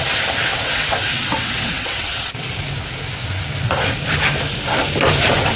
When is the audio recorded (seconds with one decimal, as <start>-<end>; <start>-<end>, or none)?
0.0-0.5; 2.5-5.6